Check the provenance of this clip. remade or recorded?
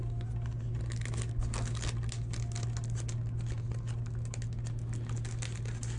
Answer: recorded